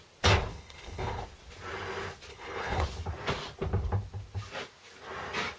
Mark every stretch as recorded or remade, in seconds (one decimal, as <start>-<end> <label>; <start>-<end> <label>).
0.0-0.5 recorded; 0.5-1.2 remade; 1.2-2.3 recorded; 2.3-2.8 remade; 2.8-5.6 recorded